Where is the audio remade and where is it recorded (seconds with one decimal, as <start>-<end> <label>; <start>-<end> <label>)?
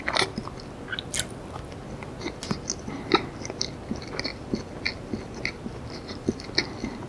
0.0-7.1 recorded